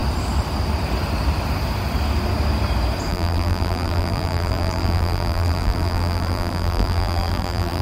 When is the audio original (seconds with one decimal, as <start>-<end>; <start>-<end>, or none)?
0.0-3.1